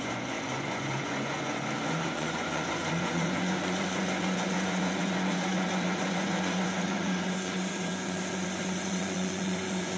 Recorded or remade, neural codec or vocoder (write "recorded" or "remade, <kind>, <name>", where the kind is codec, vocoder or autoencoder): remade, vocoder, Vocos